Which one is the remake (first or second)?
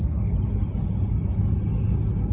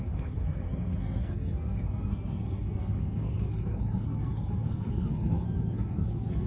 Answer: second